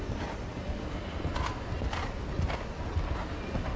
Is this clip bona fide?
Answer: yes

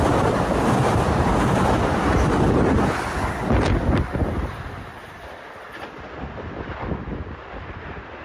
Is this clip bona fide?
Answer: yes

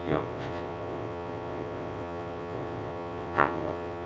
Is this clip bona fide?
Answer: no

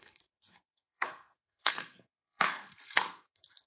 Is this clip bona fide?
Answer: no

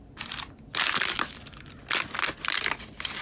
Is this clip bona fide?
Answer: yes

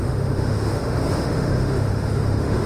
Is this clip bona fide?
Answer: no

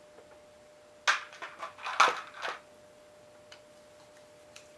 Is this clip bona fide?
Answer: yes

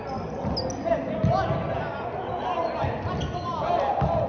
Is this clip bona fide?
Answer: yes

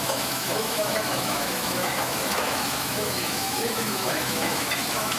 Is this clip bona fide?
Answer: no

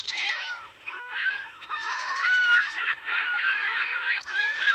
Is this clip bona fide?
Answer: no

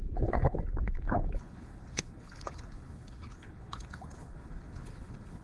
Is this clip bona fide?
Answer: no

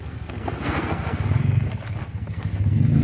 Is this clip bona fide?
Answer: no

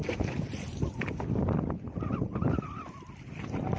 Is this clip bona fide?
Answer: yes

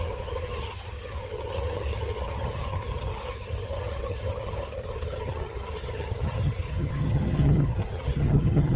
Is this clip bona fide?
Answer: no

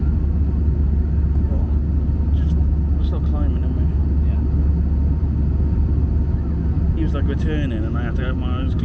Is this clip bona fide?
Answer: yes